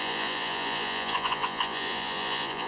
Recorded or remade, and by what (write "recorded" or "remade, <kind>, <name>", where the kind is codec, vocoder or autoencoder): remade, vocoder, Vocos